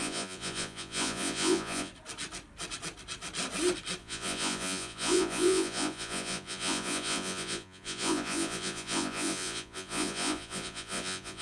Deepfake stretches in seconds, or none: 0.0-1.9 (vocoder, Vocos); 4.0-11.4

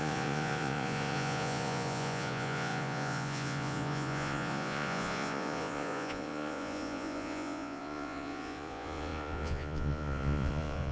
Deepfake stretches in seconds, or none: 0.0-10.9 (vocoder, Vocos)